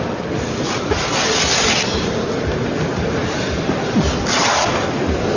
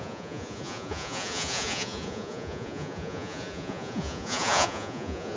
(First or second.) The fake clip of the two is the second